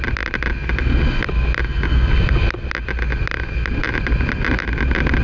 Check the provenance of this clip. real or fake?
real